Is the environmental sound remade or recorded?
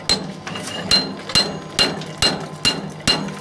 recorded